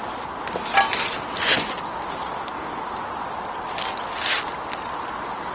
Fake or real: real